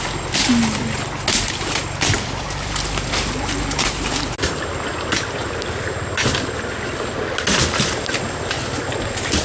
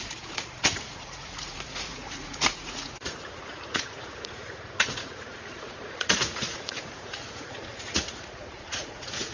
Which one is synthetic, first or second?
second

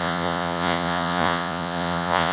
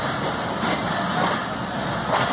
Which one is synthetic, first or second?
first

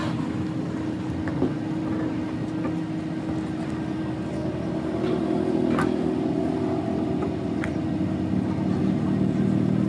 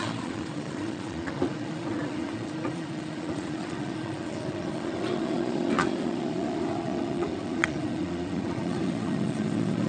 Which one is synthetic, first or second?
second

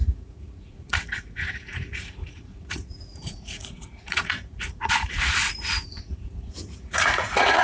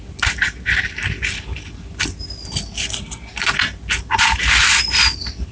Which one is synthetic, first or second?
first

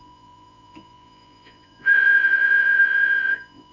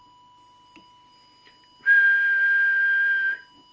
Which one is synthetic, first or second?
first